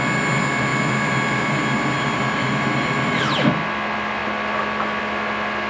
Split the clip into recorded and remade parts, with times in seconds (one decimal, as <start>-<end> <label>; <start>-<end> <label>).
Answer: 0.0-5.7 recorded